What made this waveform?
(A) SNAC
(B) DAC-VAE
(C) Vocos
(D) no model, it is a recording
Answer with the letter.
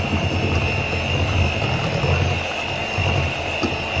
D